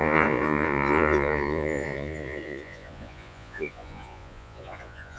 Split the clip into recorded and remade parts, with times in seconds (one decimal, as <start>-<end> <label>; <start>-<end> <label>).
0.0-5.2 remade